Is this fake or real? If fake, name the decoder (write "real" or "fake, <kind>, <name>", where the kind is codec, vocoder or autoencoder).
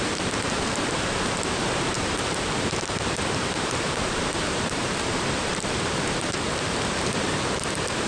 fake, vocoder, BigVGAN v2